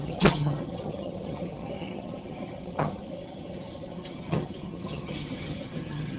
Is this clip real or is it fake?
fake